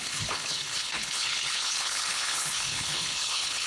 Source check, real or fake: fake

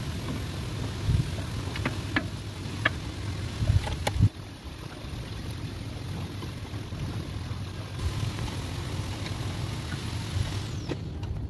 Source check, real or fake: real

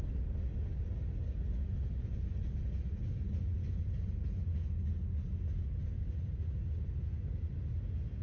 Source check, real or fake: real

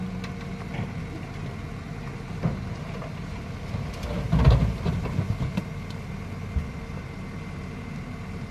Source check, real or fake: real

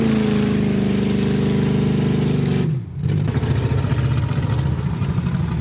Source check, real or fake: real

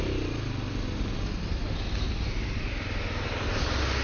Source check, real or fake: real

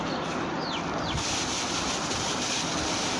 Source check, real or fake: real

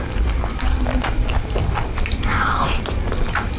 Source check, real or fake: real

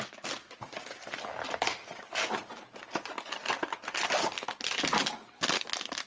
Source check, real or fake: real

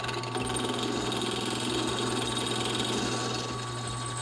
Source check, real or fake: real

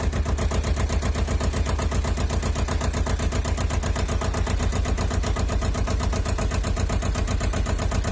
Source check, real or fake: real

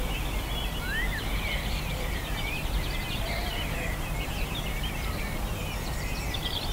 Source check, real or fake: fake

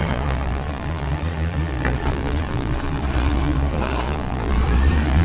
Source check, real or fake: fake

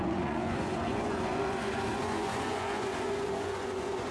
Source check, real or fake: fake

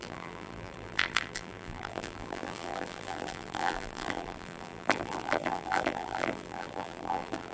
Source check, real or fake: fake